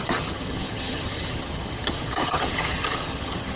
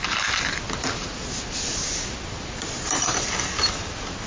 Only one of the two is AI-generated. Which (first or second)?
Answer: first